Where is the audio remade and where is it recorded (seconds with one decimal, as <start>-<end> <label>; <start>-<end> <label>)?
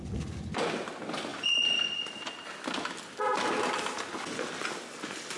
0.0-5.4 recorded